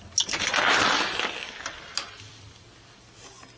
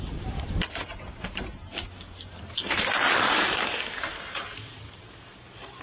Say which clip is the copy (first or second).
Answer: second